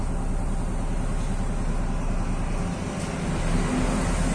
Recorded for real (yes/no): yes